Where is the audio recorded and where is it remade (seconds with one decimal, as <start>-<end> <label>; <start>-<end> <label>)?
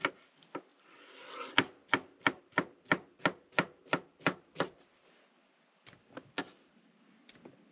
0.0-7.7 recorded